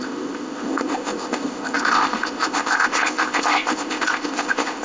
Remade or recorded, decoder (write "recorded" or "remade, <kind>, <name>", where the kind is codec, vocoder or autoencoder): remade, codec, ZipCodec